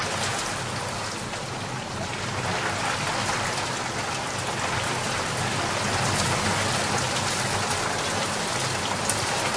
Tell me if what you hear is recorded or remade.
recorded